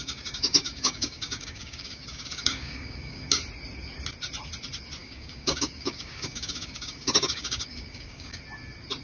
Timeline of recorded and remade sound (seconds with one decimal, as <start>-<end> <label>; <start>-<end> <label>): 0.0-3.4 remade; 3.4-5.0 recorded; 5.0-8.4 remade; 8.4-9.0 recorded